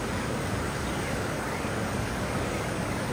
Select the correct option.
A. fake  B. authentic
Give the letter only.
A